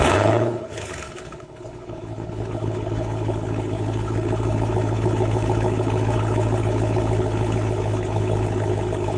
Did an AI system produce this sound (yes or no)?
yes